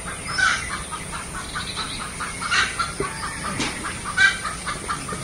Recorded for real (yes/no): no